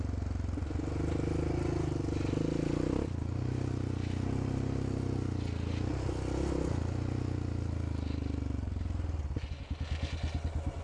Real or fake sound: real